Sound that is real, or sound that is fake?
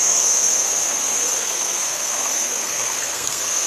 fake